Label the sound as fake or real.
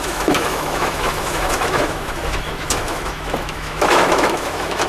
fake